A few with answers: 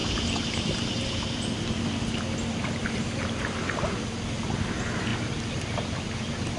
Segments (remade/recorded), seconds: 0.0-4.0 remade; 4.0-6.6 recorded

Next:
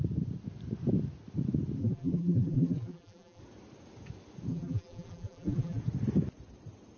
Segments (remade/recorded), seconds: 0.0-1.8 recorded; 1.8-3.4 remade; 3.4-4.5 recorded; 4.5-5.8 remade; 5.8-7.0 recorded

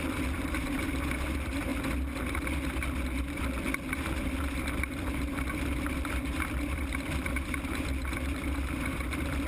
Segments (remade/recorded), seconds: 0.0-1.7 remade; 1.7-4.4 recorded; 4.4-9.5 remade

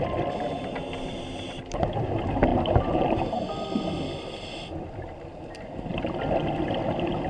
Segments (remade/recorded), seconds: 0.0-2.5 recorded; 2.5-3.8 remade; 3.8-7.3 recorded

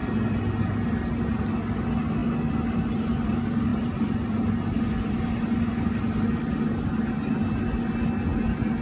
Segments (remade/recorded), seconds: 0.0-8.8 recorded